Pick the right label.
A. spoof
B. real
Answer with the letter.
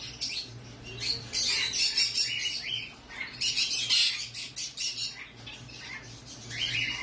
B